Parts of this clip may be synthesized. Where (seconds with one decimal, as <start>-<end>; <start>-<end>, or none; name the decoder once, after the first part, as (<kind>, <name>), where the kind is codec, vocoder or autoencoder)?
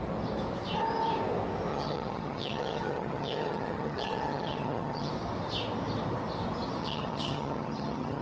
1.7-5.1 (vocoder, HiFi-GAN); 6.8-8.2